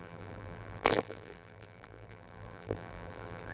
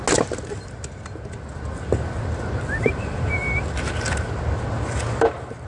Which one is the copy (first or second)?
first